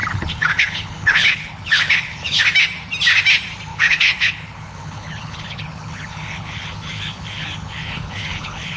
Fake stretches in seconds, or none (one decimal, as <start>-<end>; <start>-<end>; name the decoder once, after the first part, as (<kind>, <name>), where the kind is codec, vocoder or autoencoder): 0.0-2.4 (codec, HILCodec); 3.7-8.8